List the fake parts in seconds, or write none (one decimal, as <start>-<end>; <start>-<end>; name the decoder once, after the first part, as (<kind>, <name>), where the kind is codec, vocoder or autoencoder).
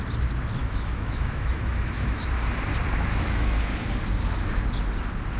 0.6-2.3 (autoencoder, DAC-VAE); 3.1-3.6